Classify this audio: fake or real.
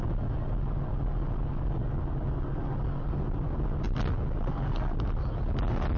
real